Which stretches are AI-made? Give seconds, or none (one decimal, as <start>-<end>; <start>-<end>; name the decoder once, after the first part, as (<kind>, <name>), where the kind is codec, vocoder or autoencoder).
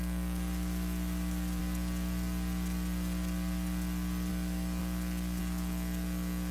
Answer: 0.0-1.6 (autoencoder, DAC-VAE); 4.3-4.8; 5.4-6.5